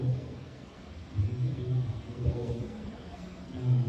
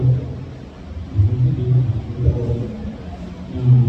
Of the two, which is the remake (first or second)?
first